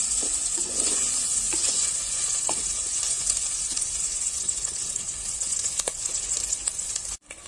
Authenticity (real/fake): fake